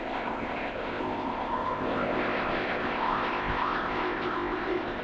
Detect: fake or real fake